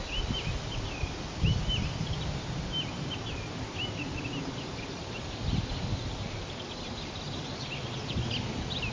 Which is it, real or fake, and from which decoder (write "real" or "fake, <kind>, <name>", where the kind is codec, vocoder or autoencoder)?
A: real